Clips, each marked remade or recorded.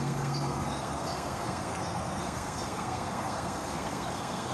remade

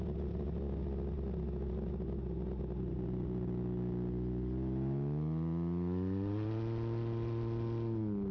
recorded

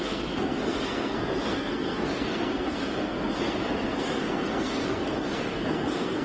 remade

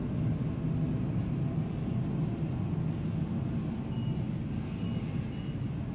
recorded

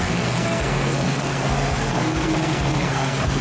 remade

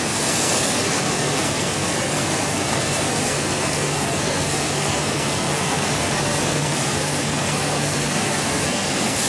remade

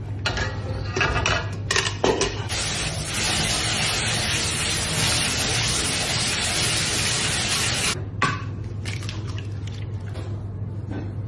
recorded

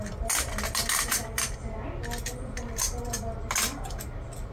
recorded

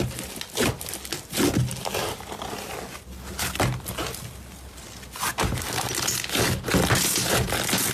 recorded